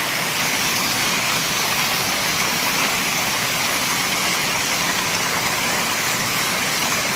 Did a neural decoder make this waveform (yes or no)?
yes